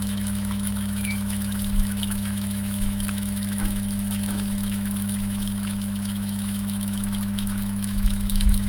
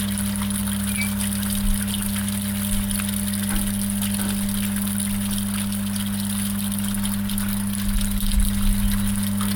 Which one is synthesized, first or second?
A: first